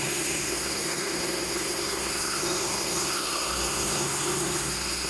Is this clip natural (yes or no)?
no